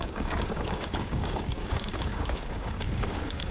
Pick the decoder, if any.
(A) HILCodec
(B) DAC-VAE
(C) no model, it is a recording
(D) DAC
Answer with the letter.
D